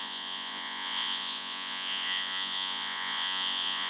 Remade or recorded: remade